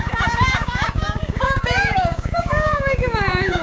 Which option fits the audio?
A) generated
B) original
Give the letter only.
A